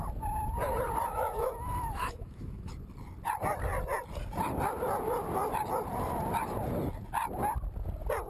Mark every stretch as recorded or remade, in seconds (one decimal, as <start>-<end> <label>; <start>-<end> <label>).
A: 0.0-1.1 recorded; 1.1-2.7 remade; 2.7-8.3 recorded